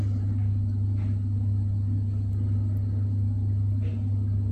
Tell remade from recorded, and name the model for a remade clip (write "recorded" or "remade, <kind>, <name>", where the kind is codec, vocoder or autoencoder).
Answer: recorded